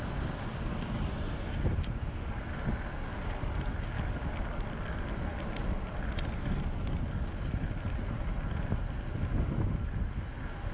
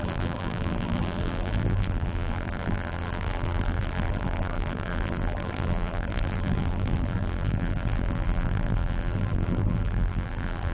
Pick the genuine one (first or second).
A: first